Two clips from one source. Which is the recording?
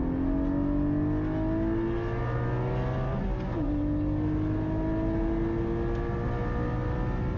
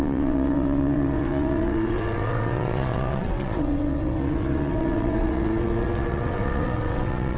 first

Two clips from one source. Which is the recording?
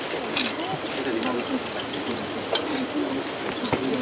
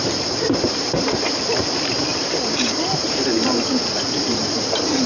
first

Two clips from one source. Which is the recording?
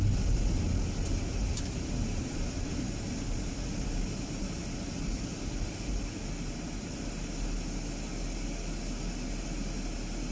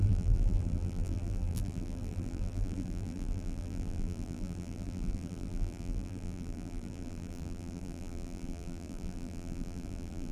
first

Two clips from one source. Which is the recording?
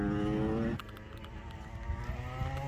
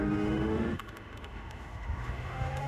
first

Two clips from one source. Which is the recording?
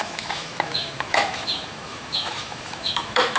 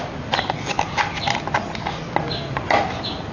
second